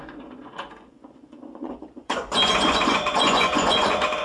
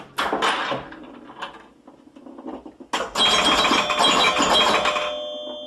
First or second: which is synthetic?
first